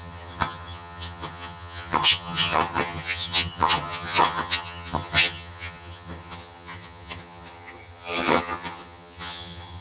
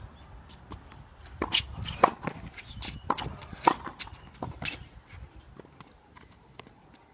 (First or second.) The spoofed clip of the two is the first